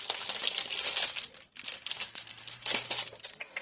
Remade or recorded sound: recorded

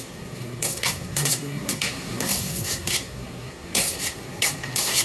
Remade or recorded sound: remade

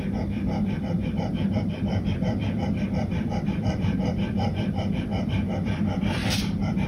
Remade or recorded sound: remade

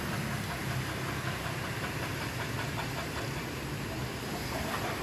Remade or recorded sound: recorded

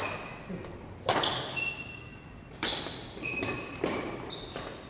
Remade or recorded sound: recorded